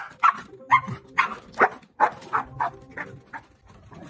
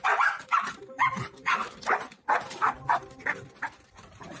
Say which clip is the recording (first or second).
first